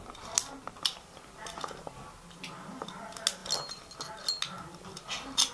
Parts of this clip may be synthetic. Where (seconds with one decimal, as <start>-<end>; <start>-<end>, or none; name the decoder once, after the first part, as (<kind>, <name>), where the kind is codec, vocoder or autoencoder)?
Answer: none